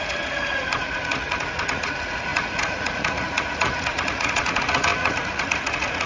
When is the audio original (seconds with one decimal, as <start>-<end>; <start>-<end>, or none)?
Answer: none